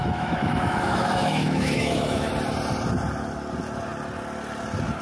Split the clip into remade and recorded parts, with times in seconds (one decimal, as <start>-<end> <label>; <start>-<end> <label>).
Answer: 0.0-2.3 remade; 2.3-5.0 recorded